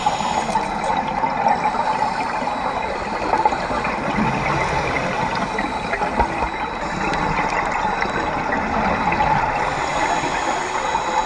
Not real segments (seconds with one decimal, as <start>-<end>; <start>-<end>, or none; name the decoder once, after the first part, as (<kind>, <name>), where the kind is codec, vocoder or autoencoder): none